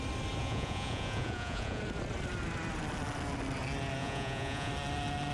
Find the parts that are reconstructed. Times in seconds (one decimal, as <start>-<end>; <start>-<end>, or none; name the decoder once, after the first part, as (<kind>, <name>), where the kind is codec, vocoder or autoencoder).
0.4-1.8 (vocoder, Vocos); 4.0-4.7